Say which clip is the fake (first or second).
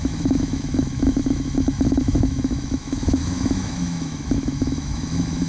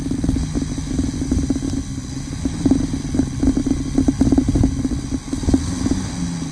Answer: first